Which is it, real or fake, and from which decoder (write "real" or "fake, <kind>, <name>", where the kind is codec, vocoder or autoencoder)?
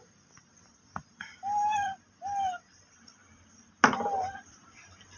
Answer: real